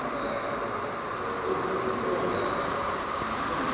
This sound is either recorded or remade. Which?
recorded